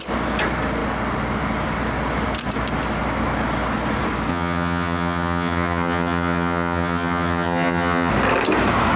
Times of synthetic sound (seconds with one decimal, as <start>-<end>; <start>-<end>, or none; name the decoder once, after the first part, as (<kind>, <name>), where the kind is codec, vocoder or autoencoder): 4.3-8.1 (vocoder, HiFi-GAN)